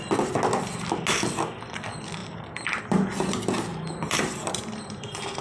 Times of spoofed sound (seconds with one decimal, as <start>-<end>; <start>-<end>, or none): 2.2-2.8; 3.7-5.4